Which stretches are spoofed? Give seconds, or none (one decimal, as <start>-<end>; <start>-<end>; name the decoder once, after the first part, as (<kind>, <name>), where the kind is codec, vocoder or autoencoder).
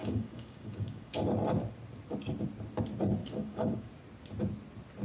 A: 0.0-1.2 (codec, DAC); 3.2-3.9